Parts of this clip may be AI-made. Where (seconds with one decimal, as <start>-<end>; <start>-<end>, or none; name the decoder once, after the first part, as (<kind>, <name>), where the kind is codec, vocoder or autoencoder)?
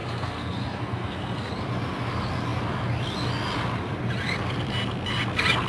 0.0-1.5 (codec, SNAC)